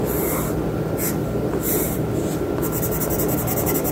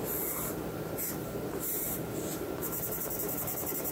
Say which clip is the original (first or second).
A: first